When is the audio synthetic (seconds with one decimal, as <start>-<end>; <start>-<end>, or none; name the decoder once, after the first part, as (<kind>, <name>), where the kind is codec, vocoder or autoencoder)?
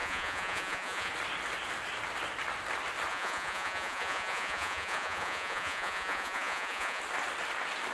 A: 0.0-1.1 (vocoder, Vocos); 3.1-7.0